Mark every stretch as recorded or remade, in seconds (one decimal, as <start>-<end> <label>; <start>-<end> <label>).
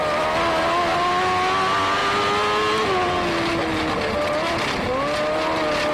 0.0-5.9 recorded